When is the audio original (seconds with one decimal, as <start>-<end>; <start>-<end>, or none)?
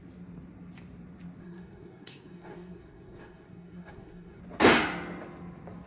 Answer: 0.0-1.4; 4.4-5.9